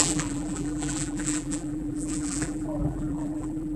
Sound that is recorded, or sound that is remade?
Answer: remade